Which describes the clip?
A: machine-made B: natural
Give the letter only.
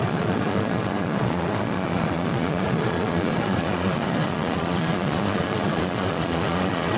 A